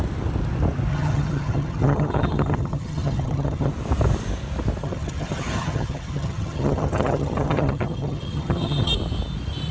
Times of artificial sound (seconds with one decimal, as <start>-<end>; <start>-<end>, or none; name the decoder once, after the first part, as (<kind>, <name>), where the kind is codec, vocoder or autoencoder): 0.9-3.7 (vocoder, HiFi-GAN); 4.8-8.9